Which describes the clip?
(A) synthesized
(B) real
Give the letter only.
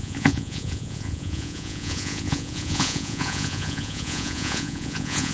A